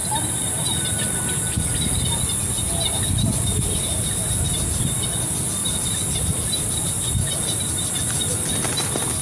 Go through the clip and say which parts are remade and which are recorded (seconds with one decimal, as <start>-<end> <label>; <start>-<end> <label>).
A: 0.0-1.3 remade; 1.3-3.5 recorded; 3.5-4.8 remade; 4.8-5.6 recorded; 5.6-7.9 remade; 7.9-9.2 recorded

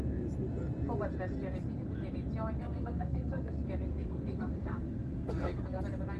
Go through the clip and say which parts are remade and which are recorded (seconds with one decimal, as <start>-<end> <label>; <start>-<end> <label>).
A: 0.0-2.6 recorded; 2.6-3.5 remade; 3.5-3.9 recorded; 3.9-5.8 remade; 5.8-6.2 recorded

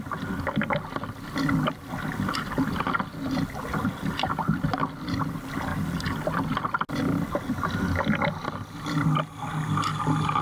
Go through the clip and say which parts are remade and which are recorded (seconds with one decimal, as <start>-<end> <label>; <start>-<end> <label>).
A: 0.0-10.4 recorded

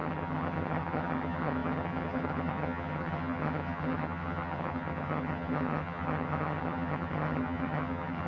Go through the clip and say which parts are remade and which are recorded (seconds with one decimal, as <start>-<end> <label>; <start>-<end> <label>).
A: 0.0-8.3 remade

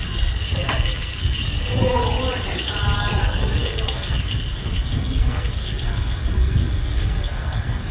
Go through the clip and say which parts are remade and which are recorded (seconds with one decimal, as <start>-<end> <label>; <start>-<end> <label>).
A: 0.0-2.0 remade; 2.0-3.2 recorded; 3.2-7.9 remade